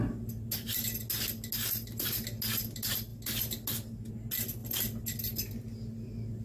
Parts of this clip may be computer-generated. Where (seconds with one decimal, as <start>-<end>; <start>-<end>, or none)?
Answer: none